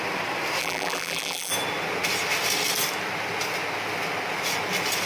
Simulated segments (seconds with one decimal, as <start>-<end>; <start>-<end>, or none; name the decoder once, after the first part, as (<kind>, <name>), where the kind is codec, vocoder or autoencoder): 0.6-1.5 (vocoder, BigVGAN v2)